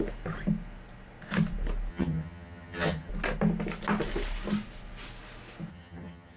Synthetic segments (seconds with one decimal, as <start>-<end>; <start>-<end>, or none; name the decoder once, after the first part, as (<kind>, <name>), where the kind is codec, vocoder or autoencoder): 1.9-3.1 (vocoder, HiFi-GAN); 5.7-6.4